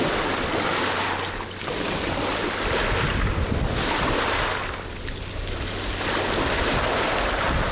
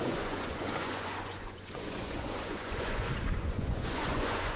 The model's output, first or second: second